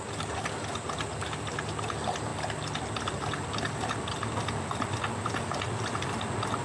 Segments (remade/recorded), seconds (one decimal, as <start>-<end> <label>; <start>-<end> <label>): 0.0-6.6 recorded